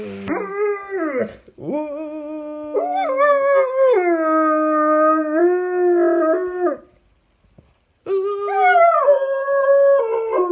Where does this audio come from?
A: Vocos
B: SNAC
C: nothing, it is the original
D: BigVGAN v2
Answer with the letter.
C